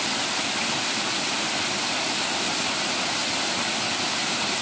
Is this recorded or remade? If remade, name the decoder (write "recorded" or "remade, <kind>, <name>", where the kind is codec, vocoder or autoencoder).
recorded